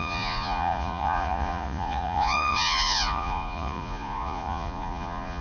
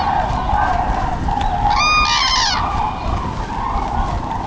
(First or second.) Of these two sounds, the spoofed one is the first